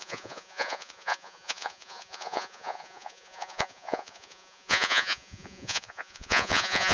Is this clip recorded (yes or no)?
no